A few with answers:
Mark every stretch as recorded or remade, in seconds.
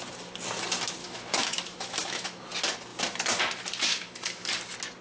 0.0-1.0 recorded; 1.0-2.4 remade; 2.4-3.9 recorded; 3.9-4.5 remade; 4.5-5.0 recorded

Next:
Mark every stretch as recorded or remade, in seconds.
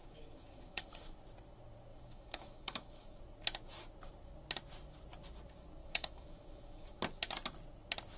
0.0-1.0 remade; 1.0-1.9 recorded; 1.9-3.2 remade; 3.2-5.8 recorded; 5.8-7.0 remade; 7.0-8.2 recorded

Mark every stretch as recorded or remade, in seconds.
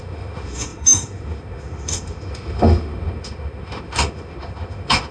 0.0-5.1 remade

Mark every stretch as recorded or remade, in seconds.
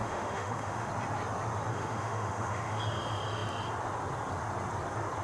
0.0-0.9 remade; 0.9-1.7 recorded; 1.7-2.8 remade; 2.8-5.2 recorded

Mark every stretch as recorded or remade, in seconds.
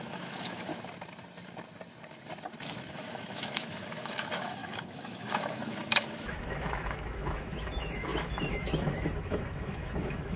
0.0-0.7 remade; 0.7-2.9 recorded; 2.9-10.4 remade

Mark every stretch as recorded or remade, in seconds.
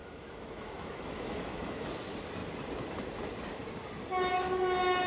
0.0-2.0 remade; 2.0-5.1 recorded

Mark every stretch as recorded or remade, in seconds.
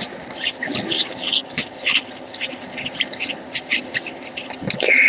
0.0-5.1 recorded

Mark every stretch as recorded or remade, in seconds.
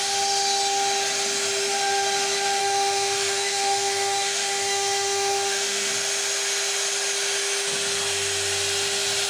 0.0-2.6 recorded; 2.6-5.9 remade; 5.9-9.3 recorded